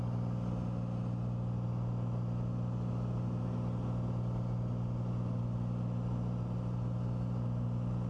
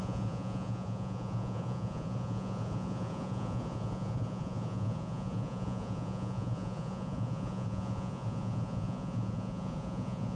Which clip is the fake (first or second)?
second